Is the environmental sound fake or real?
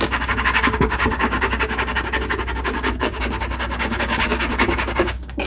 fake